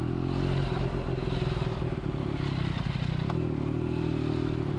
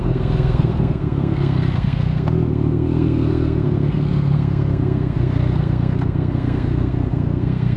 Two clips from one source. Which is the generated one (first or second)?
second